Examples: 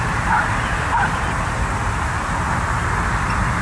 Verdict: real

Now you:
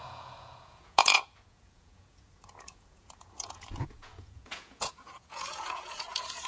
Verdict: fake